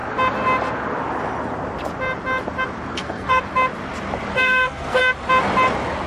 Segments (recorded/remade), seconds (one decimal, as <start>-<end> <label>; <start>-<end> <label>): 0.0-2.9 recorded; 2.9-3.4 remade; 3.4-4.3 recorded; 4.3-5.0 remade; 5.0-6.1 recorded